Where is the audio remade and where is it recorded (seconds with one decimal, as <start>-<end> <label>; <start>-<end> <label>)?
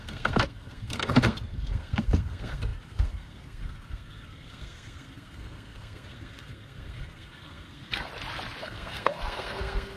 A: 0.0-8.1 remade; 8.1-8.6 recorded; 8.6-10.0 remade